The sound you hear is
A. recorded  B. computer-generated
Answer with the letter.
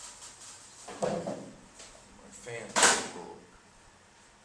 B